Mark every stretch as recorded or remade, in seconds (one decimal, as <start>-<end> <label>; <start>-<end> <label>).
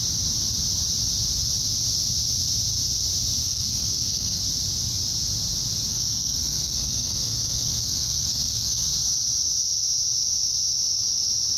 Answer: 0.0-3.4 recorded; 3.4-4.4 remade; 4.4-5.9 recorded; 5.9-8.9 remade; 8.9-11.6 recorded